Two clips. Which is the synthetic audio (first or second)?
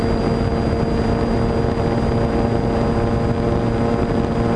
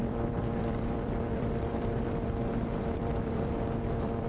second